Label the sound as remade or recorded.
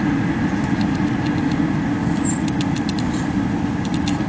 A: recorded